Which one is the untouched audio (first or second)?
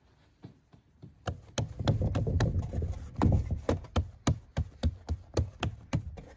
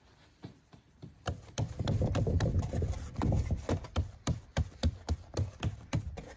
first